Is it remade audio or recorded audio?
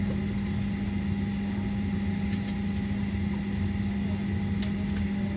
recorded